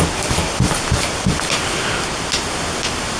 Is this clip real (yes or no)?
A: yes